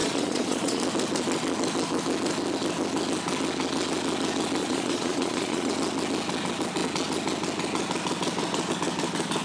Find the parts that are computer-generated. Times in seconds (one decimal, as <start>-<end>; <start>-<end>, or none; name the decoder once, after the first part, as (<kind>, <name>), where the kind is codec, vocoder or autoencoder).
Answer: 0.0-0.8 (vocoder, Vocos); 4.6-5.7